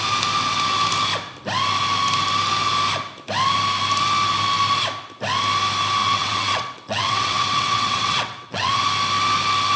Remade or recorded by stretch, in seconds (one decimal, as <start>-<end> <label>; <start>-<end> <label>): 0.0-6.0 recorded; 6.0-8.8 remade; 8.8-9.8 recorded